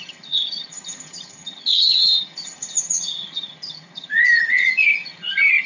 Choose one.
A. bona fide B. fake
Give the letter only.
B